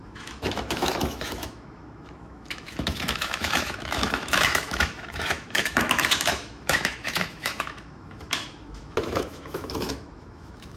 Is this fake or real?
fake